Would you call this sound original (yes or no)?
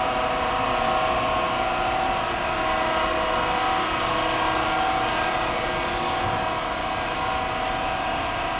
yes